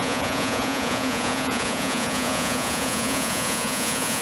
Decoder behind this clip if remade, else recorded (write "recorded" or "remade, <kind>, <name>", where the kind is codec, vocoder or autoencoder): remade, vocoder, Vocos